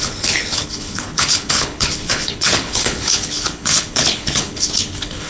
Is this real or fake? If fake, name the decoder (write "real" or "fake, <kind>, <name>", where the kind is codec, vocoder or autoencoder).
fake, codec, HILCodec